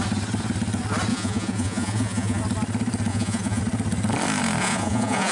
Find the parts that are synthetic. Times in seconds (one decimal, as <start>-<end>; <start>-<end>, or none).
1.1-2.4; 3.1-3.6; 4.6-5.3